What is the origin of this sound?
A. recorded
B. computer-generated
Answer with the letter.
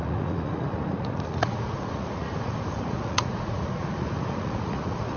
B